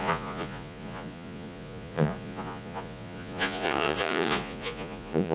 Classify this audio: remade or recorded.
remade